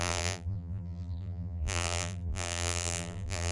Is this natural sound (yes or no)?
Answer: no